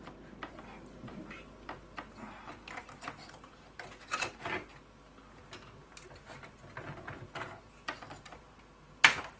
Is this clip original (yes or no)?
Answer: yes